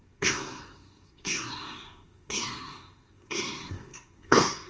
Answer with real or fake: fake